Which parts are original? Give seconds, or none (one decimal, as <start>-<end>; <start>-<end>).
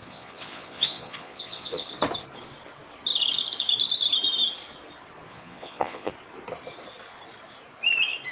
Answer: 1.9-5.3; 6.1-8.3